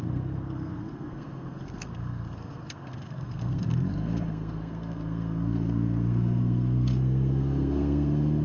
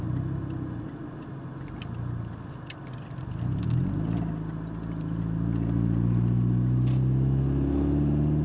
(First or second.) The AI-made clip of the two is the first